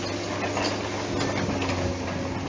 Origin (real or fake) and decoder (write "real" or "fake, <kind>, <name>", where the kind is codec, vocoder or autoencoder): real